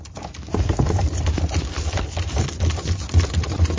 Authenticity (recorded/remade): recorded